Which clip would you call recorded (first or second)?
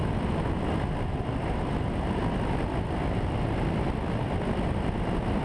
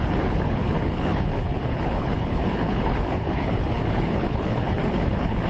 first